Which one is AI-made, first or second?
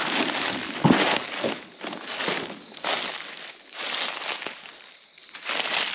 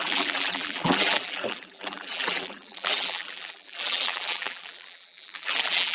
second